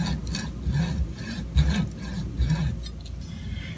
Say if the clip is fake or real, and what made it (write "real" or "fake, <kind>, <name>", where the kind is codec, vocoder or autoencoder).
real